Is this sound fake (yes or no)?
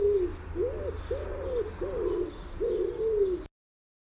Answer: no